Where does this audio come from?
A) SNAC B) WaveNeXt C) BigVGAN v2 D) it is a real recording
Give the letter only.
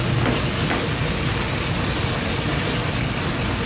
D